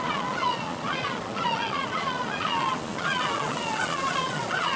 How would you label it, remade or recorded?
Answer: remade